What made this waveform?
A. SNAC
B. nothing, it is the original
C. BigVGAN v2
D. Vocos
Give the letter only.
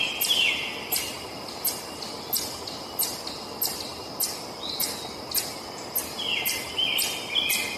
B